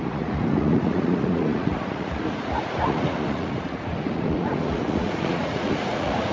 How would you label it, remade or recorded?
remade